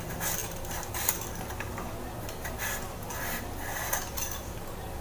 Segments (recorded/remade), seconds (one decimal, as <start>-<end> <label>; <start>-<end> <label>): 0.0-5.0 recorded